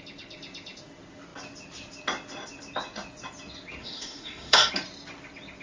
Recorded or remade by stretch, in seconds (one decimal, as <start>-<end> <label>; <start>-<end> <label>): 0.0-3.8 recorded; 3.8-4.7 remade; 4.7-5.6 recorded